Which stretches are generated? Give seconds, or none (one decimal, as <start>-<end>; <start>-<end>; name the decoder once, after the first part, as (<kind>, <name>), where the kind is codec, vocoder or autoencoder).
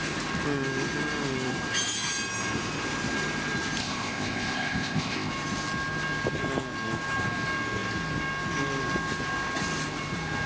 3.8-5.3 (codec, ZipCodec)